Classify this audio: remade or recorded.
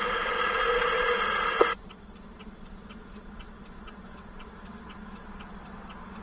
remade